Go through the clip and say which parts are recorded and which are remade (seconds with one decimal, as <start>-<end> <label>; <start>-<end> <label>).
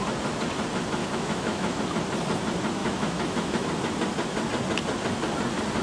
0.0-1.0 recorded; 1.0-1.8 remade; 1.8-2.8 recorded; 2.8-3.7 remade; 3.7-5.8 recorded